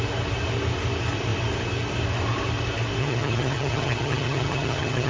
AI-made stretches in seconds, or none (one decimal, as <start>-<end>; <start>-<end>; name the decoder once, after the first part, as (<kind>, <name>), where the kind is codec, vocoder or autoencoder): 3.0-5.1 (vocoder, HiFi-GAN)

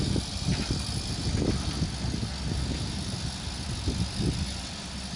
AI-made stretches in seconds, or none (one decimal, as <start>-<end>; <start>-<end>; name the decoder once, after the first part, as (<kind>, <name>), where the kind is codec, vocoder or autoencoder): none

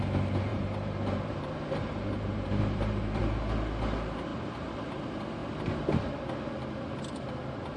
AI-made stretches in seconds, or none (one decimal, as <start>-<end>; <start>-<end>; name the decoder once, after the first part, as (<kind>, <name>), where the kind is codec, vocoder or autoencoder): 0.5-3.2 (vocoder, BigVGAN v2); 4.3-5.0

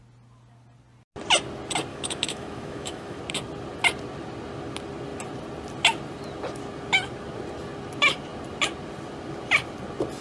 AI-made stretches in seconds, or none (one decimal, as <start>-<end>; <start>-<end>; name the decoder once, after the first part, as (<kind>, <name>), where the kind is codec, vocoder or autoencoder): 1.9-3.2 (autoencoder, DAC-VAE)

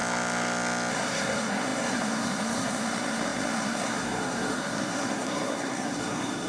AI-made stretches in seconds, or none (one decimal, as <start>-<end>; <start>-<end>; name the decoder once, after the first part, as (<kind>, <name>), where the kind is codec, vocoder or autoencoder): 0.9-6.5 (codec, SNAC)

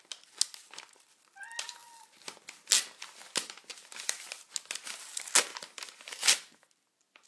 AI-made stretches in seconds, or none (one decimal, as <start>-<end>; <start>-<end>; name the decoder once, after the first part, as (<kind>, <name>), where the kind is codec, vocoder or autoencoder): 3.7-4.3 (vocoder, BigVGAN v2); 5.5-6.1

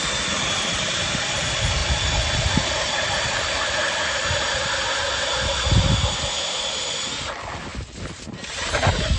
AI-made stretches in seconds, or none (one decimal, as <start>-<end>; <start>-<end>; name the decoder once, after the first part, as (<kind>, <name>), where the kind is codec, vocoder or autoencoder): none